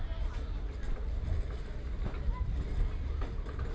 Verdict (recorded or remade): recorded